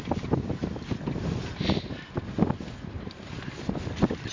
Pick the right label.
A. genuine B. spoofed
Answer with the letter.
A